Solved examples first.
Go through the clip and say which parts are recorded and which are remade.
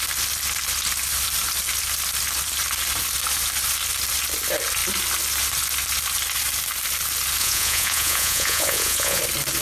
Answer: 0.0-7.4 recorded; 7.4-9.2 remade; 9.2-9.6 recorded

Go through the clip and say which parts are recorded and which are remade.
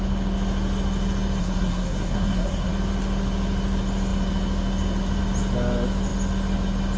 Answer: 0.0-1.4 recorded; 1.4-2.7 remade; 2.7-7.0 recorded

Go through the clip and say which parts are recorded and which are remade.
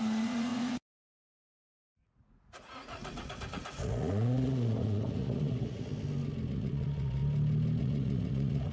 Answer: 0.0-5.9 remade; 5.9-6.5 recorded; 6.5-7.2 remade; 7.2-7.8 recorded; 7.8-8.7 remade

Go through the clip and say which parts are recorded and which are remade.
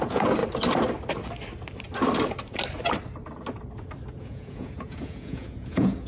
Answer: 0.0-0.4 remade; 0.4-4.1 recorded; 4.1-6.1 remade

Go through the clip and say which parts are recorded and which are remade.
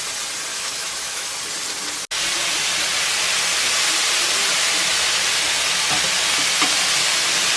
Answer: 0.0-0.5 recorded; 0.5-1.3 remade; 1.3-7.6 recorded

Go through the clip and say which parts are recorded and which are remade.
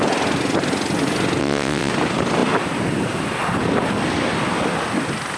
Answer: 0.0-1.4 recorded; 1.4-1.9 remade; 1.9-5.4 recorded